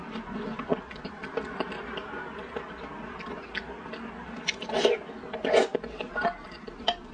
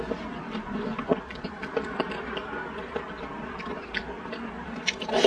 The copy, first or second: second